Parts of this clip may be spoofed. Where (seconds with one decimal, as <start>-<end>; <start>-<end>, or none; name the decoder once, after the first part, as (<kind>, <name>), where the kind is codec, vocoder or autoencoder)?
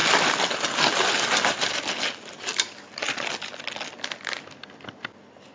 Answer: none